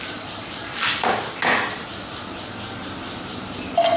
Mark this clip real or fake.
real